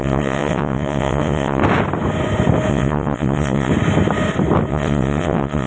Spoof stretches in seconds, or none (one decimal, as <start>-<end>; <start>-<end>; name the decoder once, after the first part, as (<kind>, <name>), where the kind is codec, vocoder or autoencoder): 0.0-1.6 (vocoder, WaveNeXt); 2.7-3.7; 4.7-5.7